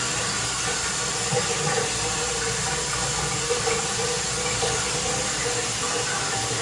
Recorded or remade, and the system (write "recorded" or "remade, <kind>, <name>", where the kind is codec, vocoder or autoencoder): recorded